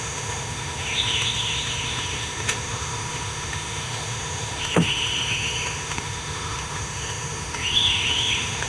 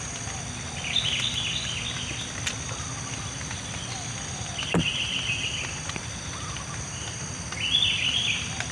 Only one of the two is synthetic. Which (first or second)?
first